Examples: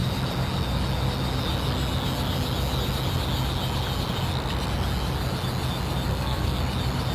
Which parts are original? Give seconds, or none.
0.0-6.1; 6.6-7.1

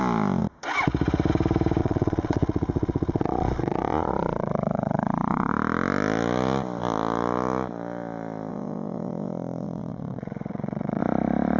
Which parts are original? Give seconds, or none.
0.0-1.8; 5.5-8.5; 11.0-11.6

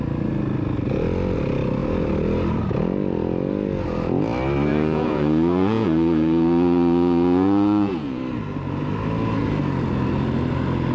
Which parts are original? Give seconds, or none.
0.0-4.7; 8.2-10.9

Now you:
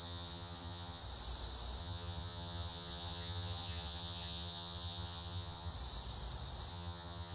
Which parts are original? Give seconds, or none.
1.0-1.8; 5.7-6.7